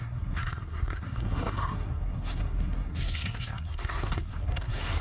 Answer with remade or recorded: remade